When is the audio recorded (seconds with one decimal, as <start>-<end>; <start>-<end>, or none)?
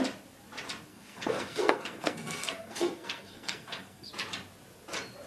0.0-0.9; 4.1-5.3